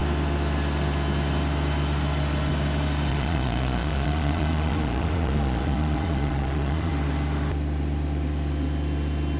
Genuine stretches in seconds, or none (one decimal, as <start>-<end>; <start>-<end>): 0.0-3.1; 6.9-9.4